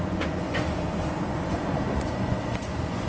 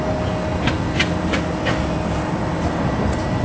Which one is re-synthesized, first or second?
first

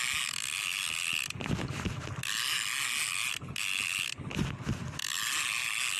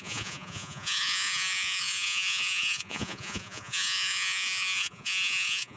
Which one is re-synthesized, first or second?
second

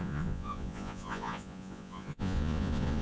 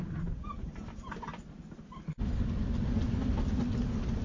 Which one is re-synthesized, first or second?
first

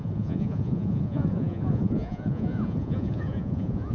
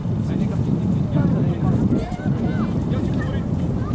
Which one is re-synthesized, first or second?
first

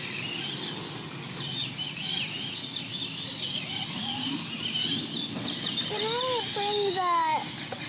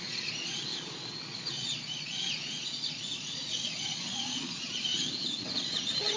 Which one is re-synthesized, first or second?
second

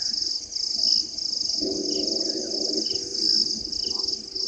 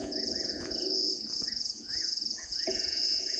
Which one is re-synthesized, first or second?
second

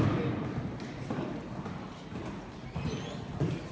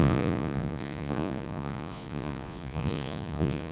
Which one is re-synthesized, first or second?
second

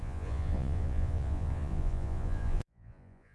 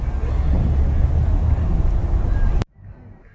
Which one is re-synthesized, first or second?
first